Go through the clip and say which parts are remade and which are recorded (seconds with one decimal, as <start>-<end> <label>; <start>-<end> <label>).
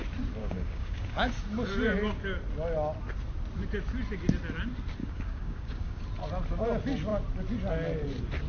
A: 0.0-0.4 recorded; 0.4-1.3 remade; 1.3-5.0 recorded; 5.0-6.0 remade; 6.0-8.5 recorded